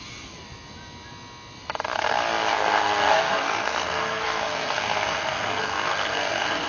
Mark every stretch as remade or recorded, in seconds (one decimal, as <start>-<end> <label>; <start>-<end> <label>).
0.0-2.5 recorded; 2.5-6.7 remade